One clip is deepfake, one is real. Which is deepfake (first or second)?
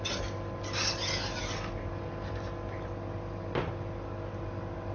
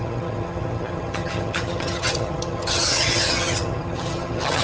second